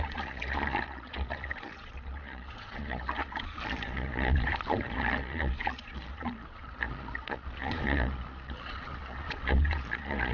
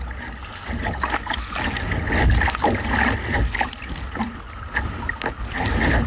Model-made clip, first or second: first